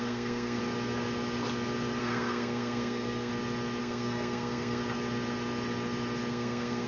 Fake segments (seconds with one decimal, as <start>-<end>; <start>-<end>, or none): 0.0-0.6; 2.0-3.3; 3.8-4.8; 6.3-6.9